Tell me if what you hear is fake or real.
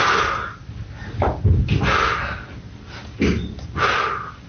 real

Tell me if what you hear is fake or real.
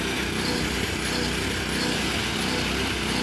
real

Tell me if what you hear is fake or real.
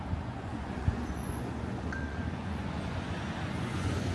fake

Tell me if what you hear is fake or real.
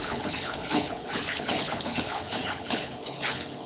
fake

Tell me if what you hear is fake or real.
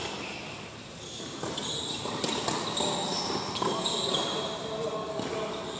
real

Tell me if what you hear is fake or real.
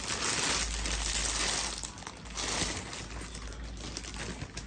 real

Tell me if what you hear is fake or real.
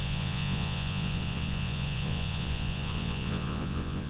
fake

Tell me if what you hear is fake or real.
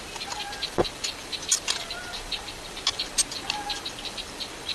fake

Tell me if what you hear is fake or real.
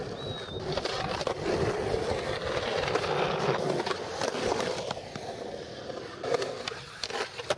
real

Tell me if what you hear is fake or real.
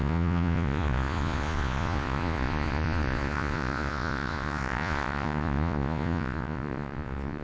fake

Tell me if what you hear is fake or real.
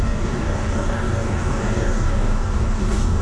fake